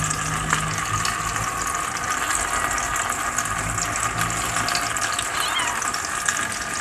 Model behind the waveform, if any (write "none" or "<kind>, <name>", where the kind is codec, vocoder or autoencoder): none